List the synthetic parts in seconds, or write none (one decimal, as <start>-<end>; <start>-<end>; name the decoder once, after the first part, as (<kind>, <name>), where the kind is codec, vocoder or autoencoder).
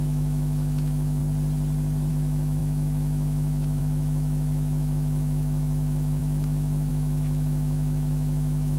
0.0-1.2 (autoencoder, DAC-VAE); 2.1-8.8